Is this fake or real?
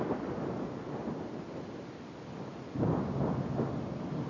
real